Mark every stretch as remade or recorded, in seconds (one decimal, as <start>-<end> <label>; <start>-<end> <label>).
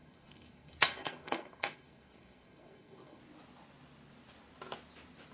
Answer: 0.0-3.2 remade; 3.2-5.3 recorded